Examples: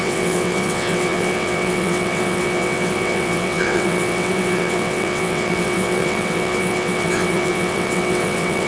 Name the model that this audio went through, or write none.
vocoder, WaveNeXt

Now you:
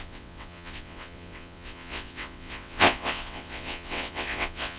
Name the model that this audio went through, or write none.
vocoder, WaveNeXt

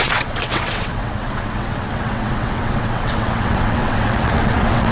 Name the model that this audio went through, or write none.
vocoder, WaveNeXt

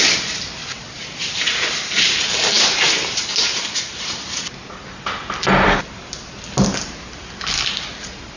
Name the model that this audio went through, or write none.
none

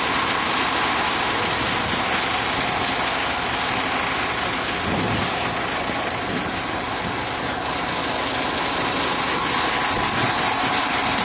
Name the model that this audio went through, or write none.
none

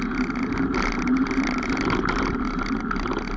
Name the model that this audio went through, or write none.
none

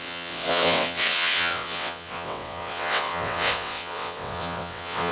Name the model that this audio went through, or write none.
vocoder, WaveNeXt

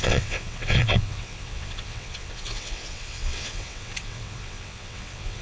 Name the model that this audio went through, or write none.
vocoder, WaveNeXt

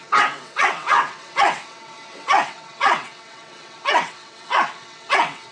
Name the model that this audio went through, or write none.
vocoder, WaveNeXt